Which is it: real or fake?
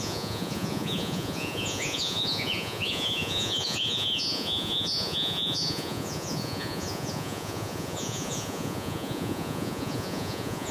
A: fake